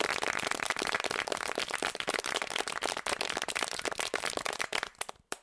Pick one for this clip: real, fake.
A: fake